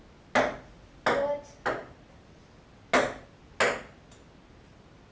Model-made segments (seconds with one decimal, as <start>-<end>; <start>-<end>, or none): none